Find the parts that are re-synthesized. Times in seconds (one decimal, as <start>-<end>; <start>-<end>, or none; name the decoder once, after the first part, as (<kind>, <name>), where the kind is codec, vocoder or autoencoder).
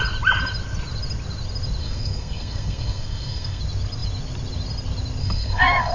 1.8-3.6 (codec, SNAC); 5.2-5.9